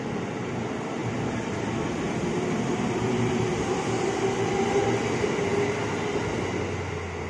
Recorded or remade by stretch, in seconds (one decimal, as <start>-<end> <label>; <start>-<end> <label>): 0.0-1.0 recorded; 1.0-4.5 remade; 4.5-7.3 recorded